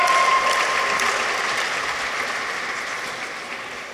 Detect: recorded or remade recorded